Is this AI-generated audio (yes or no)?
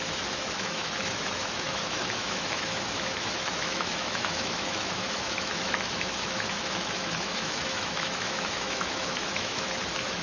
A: yes